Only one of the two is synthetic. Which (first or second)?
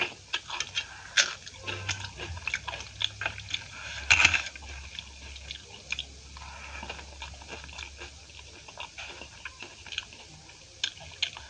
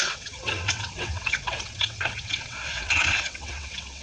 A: second